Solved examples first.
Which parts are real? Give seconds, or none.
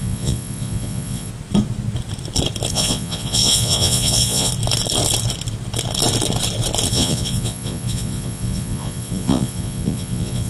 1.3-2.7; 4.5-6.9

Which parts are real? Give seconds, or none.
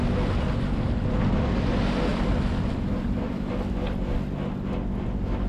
0.0-2.1; 3.5-5.5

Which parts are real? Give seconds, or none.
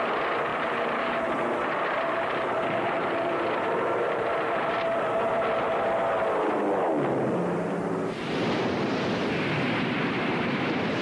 0.0-0.5; 4.7-11.0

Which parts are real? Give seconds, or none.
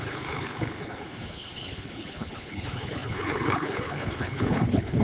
none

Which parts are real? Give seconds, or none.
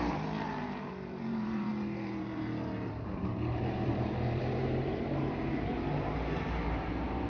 none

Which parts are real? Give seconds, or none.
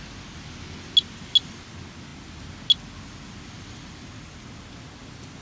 0.0-5.4